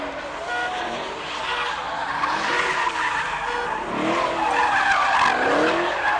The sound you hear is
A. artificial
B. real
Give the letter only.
B